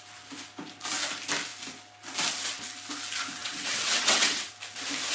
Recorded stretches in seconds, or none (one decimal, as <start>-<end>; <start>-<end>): 0.0-3.4; 4.5-5.1